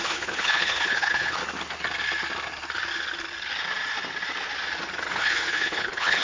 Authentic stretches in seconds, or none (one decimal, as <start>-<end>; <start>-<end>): 1.4-5.1